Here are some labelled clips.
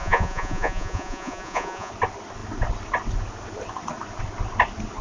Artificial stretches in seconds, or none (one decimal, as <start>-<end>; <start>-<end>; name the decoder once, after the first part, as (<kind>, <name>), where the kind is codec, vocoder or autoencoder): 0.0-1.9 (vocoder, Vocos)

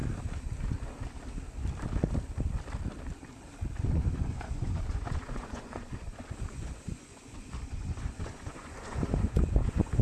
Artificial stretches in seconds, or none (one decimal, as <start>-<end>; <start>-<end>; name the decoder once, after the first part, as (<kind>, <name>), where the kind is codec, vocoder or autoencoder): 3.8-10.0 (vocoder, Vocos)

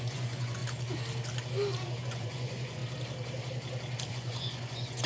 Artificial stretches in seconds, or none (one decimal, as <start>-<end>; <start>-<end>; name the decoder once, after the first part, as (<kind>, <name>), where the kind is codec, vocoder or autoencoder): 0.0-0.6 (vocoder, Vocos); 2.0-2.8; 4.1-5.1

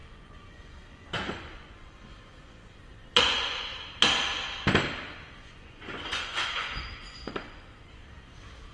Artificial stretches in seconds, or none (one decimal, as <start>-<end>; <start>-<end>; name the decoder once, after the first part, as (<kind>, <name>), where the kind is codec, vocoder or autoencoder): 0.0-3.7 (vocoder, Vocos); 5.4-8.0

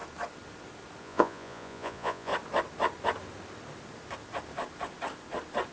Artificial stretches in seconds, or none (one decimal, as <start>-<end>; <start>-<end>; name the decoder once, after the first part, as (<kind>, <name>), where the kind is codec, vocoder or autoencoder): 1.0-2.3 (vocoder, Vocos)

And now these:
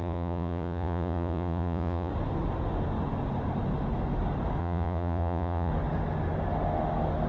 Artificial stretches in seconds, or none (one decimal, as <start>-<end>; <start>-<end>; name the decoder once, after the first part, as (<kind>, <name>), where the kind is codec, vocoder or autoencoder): 0.0-2.1 (vocoder, Vocos); 4.6-5.7